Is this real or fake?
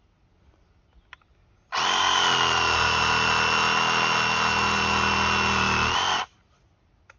real